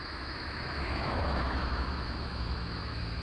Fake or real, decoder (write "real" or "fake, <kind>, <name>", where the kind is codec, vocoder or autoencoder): fake, autoencoder, DAC-VAE